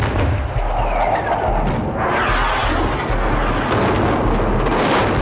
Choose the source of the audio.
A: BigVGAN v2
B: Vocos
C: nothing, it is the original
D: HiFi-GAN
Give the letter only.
C